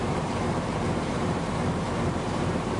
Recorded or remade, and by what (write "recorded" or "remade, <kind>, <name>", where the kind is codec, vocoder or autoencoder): remade, vocoder, BigVGAN v2